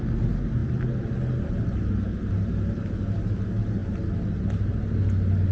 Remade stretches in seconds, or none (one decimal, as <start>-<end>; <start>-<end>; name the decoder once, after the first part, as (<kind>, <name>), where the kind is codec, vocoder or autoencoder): none